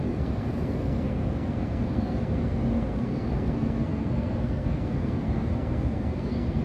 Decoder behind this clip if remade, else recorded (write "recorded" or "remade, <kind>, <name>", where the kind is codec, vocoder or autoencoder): remade, codec, SNAC